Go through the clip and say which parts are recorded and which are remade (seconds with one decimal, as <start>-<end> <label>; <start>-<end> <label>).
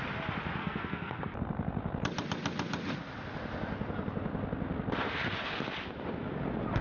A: 0.0-0.6 recorded; 0.6-1.2 remade; 1.2-6.8 recorded